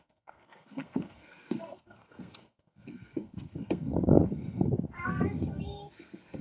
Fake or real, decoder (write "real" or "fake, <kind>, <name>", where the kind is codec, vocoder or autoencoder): fake, codec, SNAC